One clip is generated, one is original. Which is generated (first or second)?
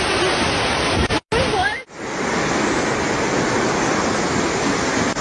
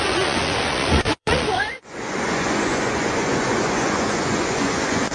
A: second